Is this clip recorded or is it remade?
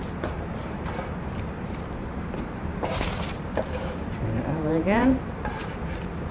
remade